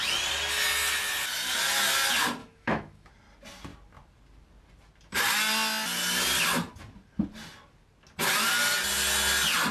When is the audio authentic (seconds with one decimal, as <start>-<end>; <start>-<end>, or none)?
0.0-2.4; 3.1-9.7

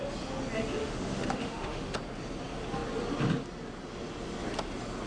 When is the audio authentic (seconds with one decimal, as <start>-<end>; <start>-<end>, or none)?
0.0-0.8; 1.9-5.1

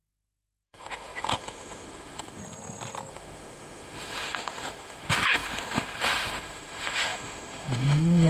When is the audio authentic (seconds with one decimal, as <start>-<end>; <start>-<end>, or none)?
2.4-3.1

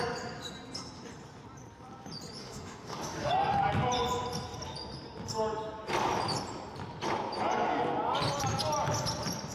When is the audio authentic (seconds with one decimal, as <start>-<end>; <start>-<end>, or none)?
0.0-2.4; 3.3-9.5

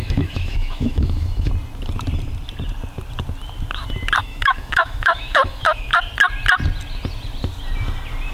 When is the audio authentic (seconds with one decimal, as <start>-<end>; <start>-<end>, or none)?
1.5-4.2; 6.0-8.3

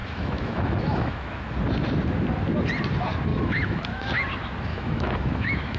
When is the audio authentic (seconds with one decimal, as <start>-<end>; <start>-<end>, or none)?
1.4-3.3; 4.1-4.7

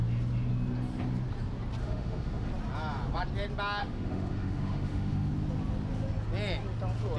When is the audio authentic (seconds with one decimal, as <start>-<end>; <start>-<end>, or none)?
0.0-1.8; 2.5-3.8; 5.3-7.2